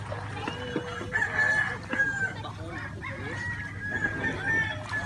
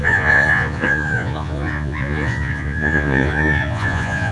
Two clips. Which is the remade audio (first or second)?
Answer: second